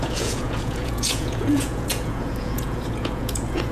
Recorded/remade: remade